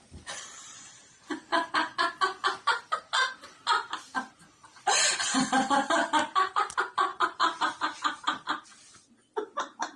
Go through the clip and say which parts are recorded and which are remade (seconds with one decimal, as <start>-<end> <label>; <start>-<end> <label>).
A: 0.0-7.1 recorded; 7.1-9.1 remade; 9.1-10.0 recorded